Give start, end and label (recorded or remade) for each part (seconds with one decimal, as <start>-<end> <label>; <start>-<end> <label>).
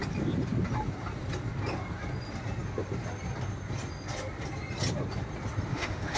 0.0-5.7 recorded; 5.7-6.2 remade